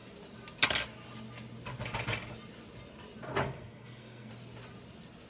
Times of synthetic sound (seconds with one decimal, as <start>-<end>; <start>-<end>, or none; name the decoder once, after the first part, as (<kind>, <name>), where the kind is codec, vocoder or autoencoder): 3.4-4.3 (codec, SNAC)